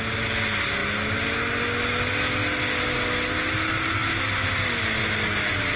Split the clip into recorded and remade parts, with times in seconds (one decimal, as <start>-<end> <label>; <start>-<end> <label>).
0.0-5.8 recorded